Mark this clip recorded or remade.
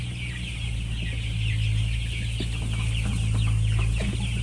recorded